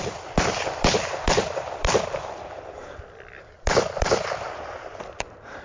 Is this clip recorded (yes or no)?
no